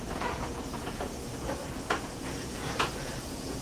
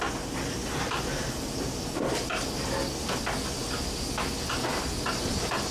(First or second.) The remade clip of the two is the first